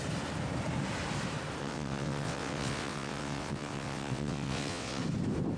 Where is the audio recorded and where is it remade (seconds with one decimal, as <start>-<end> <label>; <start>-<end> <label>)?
0.0-1.6 recorded; 1.6-5.0 remade; 5.0-5.6 recorded